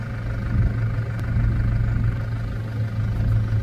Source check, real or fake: real